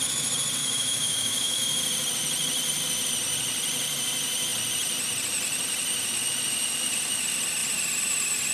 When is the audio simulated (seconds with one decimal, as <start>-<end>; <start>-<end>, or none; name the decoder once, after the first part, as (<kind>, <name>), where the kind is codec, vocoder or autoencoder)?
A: 0.6-1.6 (autoencoder, DAC-VAE)